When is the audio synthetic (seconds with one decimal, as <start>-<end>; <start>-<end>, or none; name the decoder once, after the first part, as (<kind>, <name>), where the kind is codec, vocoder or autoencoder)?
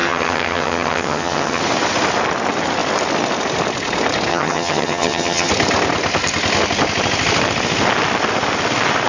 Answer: 0.0-1.6 (vocoder, HiFi-GAN); 4.3-5.5